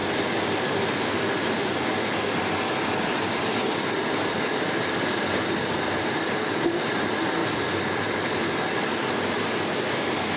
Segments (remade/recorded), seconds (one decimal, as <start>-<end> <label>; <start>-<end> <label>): 0.0-10.4 recorded